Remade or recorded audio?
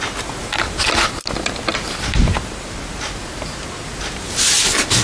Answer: recorded